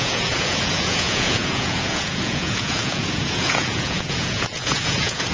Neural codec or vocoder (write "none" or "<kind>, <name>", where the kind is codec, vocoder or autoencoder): vocoder, Vocos